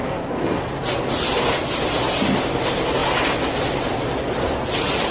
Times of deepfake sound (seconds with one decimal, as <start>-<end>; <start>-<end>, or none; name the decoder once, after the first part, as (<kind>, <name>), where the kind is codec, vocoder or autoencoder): 0.0-0.6 (codec, SNAC)